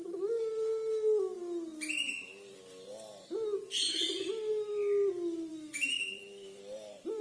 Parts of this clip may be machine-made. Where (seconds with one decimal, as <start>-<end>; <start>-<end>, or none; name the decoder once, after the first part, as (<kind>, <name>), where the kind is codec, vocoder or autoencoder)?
5.5-6.6 (autoencoder, DAC-VAE)